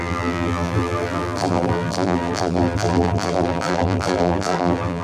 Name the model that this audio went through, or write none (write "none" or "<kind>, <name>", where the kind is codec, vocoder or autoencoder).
vocoder, BigVGAN v2